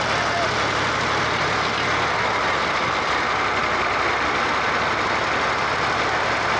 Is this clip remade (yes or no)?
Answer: no